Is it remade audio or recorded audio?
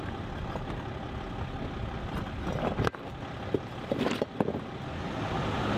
recorded